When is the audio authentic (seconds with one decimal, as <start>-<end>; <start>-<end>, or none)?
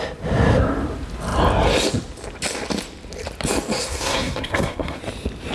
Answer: 0.0-3.8; 5.0-5.5